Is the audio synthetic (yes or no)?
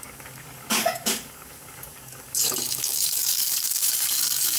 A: yes